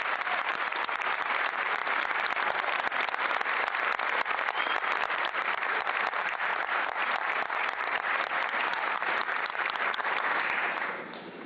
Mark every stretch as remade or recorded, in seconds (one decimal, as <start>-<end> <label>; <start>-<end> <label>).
0.0-1.8 remade; 1.8-5.1 recorded; 5.1-11.5 remade